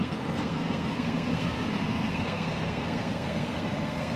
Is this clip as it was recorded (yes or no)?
no